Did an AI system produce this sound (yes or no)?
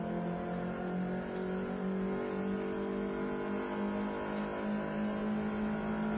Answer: no